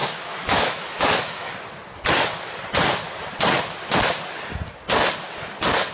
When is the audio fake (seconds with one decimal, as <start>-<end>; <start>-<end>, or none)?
0.0-1.5